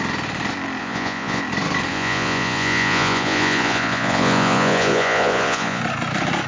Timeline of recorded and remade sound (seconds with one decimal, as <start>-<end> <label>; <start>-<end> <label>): 0.0-0.8 recorded; 0.8-1.4 remade; 1.4-1.9 recorded; 1.9-5.8 remade; 5.8-6.5 recorded